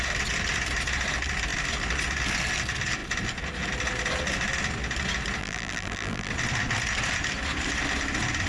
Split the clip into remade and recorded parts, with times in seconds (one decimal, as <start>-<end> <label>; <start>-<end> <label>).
0.0-5.4 recorded; 5.4-6.3 remade; 6.3-8.5 recorded